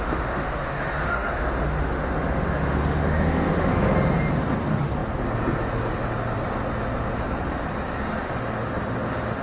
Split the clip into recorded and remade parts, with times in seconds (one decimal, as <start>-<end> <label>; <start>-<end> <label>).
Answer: 0.0-3.9 remade; 3.9-9.4 recorded